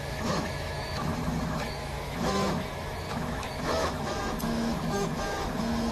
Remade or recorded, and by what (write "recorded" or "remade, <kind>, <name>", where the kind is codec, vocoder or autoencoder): remade, autoencoder, DAC-VAE